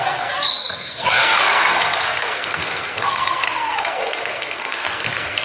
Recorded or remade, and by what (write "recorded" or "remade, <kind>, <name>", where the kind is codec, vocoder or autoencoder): remade, codec, SNAC